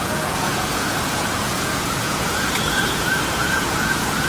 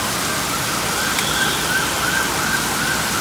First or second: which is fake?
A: first